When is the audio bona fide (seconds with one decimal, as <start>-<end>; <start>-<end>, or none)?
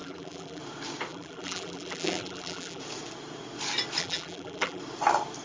0.6-1.1; 2.8-4.0; 4.8-5.4